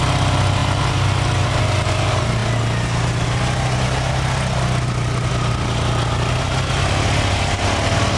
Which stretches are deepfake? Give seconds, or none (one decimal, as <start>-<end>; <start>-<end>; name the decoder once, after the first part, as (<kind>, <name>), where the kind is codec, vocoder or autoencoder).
none